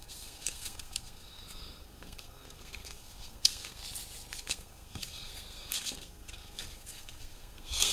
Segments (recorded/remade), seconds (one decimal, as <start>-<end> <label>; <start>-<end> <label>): 0.0-3.8 remade; 3.8-4.4 recorded; 4.4-7.9 remade

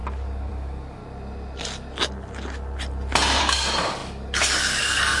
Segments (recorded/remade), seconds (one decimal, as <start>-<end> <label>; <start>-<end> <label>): 0.0-1.0 remade; 1.0-3.4 recorded; 3.4-5.2 remade

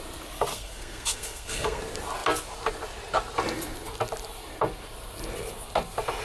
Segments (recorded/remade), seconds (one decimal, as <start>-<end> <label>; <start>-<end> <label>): 0.0-0.5 recorded; 0.5-1.8 remade; 1.8-6.2 recorded

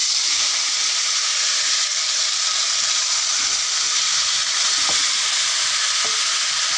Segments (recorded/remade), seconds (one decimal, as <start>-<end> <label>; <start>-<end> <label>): 0.0-0.7 remade; 0.7-2.5 recorded; 2.5-3.2 remade; 3.2-6.8 recorded

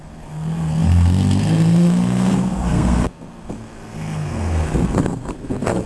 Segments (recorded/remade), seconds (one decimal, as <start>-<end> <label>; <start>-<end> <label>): 0.0-5.9 remade

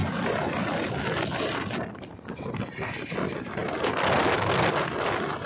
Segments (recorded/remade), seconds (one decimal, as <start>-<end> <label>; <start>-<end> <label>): 0.0-5.5 recorded